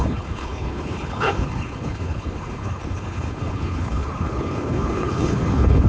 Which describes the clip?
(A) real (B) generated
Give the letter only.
B